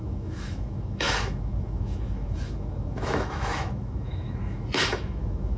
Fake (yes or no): yes